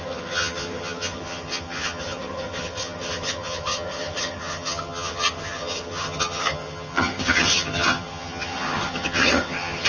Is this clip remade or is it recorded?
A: remade